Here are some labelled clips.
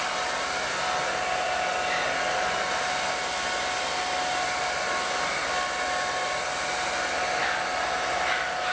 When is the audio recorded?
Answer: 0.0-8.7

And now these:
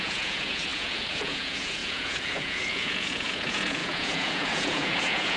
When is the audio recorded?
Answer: none

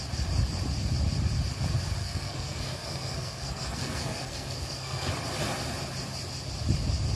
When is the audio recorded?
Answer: 0.0-2.0; 5.1-7.2

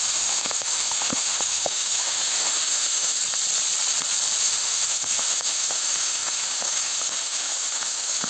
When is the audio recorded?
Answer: 3.2-4.4

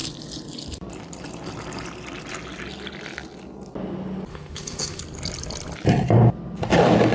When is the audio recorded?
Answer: 0.0-4.3; 5.0-7.1

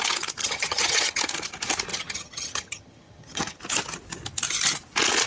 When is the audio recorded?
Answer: 0.0-0.4; 1.2-1.9; 3.6-5.3